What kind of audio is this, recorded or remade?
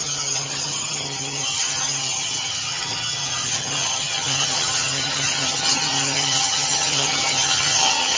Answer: remade